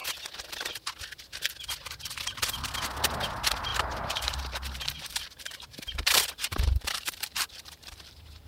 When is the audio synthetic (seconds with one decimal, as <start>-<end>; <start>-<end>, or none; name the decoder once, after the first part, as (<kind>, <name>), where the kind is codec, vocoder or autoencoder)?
3.7-8.1 (vocoder, BigVGAN v2)